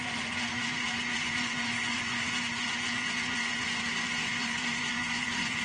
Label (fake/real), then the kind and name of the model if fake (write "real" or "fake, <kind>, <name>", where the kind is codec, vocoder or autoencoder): fake, vocoder, Vocos